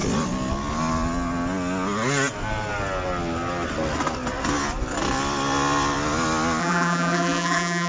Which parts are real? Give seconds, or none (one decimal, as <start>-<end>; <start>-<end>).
0.0-6.6